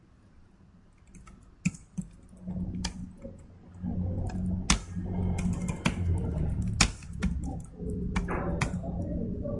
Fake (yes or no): no